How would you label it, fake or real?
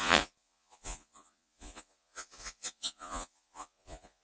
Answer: fake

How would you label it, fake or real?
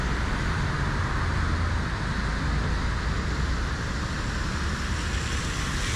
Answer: real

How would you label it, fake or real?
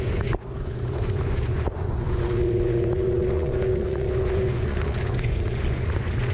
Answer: fake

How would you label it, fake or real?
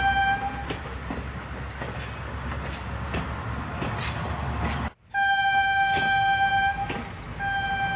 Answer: real